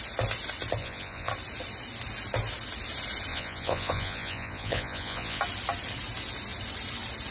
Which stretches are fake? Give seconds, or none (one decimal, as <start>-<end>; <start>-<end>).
0.8-1.3; 3.3-5.4